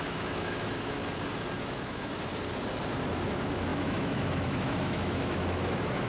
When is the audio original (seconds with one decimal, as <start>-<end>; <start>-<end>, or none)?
1.0-1.6; 2.3-3.1